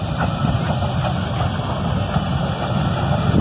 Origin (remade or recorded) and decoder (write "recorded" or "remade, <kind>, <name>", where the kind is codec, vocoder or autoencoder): recorded